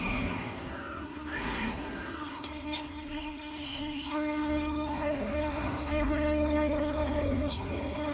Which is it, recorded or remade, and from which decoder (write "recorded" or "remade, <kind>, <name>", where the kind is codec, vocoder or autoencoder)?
remade, codec, SNAC